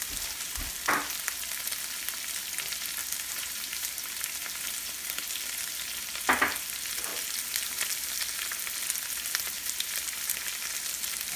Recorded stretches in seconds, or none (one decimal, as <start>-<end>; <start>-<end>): 0.0-3.0; 4.2-11.4